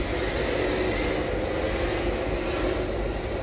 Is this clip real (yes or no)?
yes